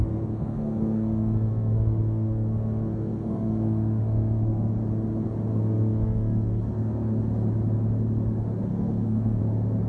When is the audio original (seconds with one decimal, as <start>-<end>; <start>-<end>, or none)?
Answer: 4.7-5.5; 7.2-8.7; 9.4-9.9